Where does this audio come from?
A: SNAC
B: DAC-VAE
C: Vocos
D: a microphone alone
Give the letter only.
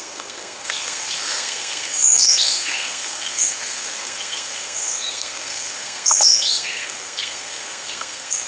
A